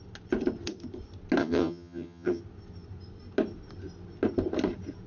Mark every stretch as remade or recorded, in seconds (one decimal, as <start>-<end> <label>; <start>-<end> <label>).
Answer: 0.0-1.4 recorded; 1.4-2.4 remade; 2.4-5.1 recorded